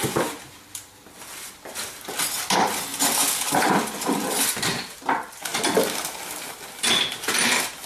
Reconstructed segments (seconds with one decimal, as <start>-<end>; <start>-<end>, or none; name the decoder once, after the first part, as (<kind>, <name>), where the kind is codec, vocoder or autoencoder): none